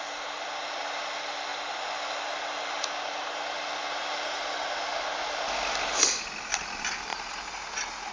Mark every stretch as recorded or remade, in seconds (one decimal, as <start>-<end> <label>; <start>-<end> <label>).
0.0-7.1 recorded; 7.1-8.1 remade